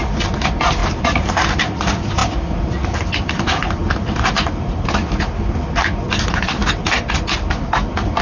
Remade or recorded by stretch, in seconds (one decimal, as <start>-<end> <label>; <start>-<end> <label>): 0.0-0.8 recorded; 0.8-1.8 remade; 1.8-3.8 recorded; 3.8-4.8 remade; 4.8-8.2 recorded